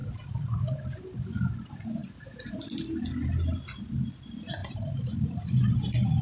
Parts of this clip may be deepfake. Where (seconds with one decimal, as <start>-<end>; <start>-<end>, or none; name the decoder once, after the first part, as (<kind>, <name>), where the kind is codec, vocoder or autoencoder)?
0.0-1.5 (vocoder, BigVGAN v2); 4.6-5.1